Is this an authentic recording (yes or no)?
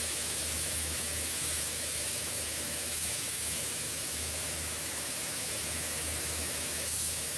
no